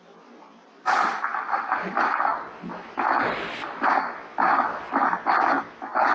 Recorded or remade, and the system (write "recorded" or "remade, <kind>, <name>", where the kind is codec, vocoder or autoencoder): recorded